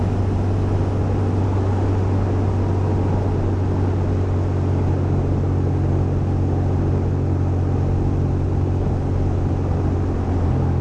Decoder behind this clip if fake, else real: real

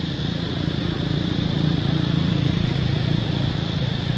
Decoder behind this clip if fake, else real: fake, vocoder, Vocos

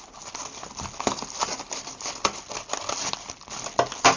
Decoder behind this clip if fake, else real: real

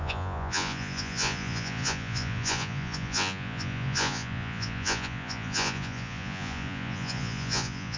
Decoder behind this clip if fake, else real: fake, vocoder, Vocos